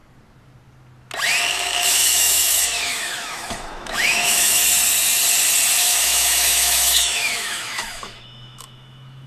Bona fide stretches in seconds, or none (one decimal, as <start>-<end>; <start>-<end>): 0.0-1.5; 4.6-5.8

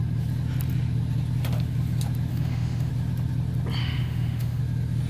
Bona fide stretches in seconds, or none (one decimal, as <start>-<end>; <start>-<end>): 0.0-2.3; 2.9-3.8; 4.6-5.1

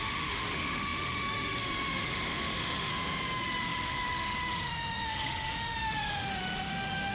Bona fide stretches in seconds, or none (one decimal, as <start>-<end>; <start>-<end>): 2.9-3.4

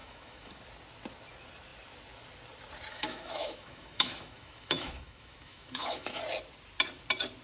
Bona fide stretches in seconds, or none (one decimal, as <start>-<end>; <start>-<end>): 0.6-2.9; 6.2-7.4